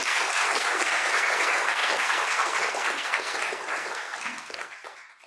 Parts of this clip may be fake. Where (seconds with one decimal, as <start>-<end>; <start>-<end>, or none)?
0.0-5.3